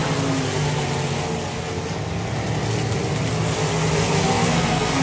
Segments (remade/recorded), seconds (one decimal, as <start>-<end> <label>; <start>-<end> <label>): 0.0-4.4 recorded; 4.4-5.0 remade